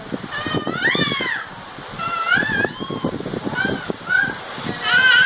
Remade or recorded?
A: recorded